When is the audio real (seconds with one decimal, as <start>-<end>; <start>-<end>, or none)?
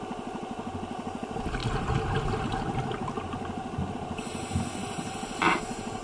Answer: 0.0-6.0